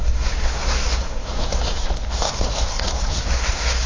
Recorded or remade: remade